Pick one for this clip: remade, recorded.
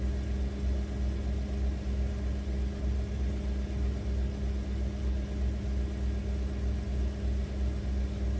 recorded